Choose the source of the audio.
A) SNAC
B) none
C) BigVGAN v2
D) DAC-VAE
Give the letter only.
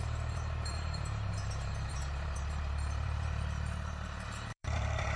C